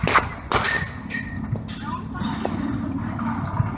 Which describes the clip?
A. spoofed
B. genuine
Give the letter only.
B